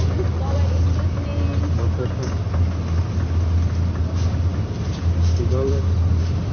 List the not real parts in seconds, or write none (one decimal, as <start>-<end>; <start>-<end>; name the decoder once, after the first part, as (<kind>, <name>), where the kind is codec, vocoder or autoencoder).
none